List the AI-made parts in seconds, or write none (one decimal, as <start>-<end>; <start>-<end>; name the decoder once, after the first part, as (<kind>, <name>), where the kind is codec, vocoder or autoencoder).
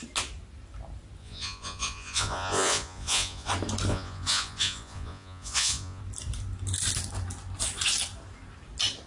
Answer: 1.2-3.5 (vocoder, Vocos); 3.9-6.0